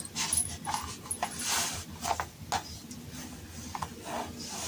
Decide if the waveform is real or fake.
real